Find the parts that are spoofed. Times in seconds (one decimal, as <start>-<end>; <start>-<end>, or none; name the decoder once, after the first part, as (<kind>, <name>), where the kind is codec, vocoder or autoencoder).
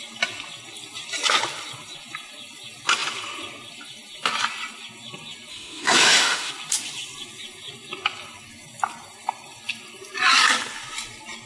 5.5-6.5 (autoencoder, DAC-VAE)